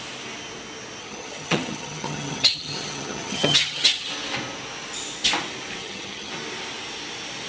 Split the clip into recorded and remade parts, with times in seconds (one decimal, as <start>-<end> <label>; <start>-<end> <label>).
0.0-1.0 recorded; 1.0-4.1 remade; 4.1-5.8 recorded; 5.8-6.3 remade; 6.3-7.5 recorded